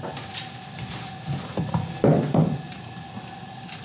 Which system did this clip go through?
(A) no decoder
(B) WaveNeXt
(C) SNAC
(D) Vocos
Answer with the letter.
A